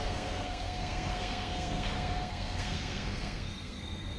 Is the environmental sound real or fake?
fake